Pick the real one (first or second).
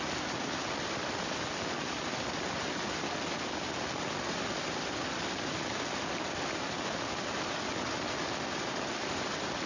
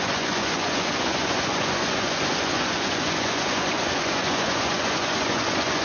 first